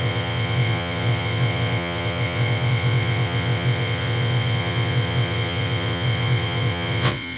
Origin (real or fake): fake